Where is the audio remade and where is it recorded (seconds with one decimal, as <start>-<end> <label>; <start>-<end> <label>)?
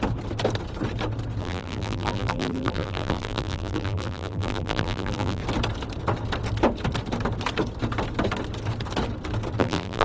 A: 0.0-1.4 recorded; 1.4-5.4 remade; 5.4-9.6 recorded; 9.6-10.0 remade